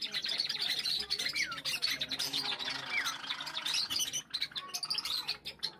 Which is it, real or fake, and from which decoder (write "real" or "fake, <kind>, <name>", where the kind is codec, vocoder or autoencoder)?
real